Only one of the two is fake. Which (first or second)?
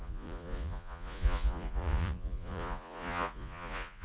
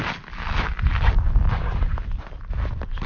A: first